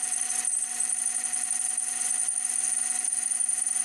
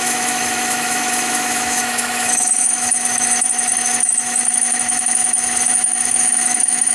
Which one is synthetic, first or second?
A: second